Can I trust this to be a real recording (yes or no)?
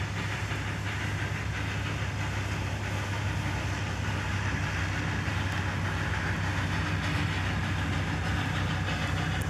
yes